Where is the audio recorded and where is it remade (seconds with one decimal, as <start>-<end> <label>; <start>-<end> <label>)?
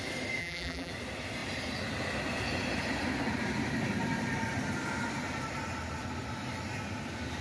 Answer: 0.0-0.4 recorded; 0.4-0.9 remade; 0.9-7.4 recorded